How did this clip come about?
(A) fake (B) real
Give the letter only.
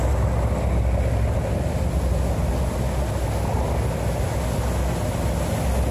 B